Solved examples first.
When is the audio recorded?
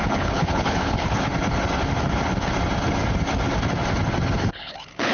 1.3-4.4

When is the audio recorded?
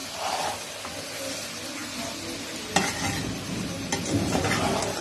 0.0-5.0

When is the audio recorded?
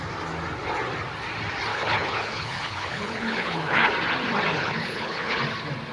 0.0-1.7; 3.9-4.5; 5.4-5.9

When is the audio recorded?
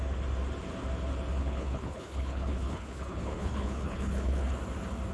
0.0-1.4; 4.5-5.1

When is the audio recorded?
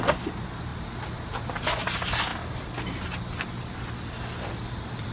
0.0-5.1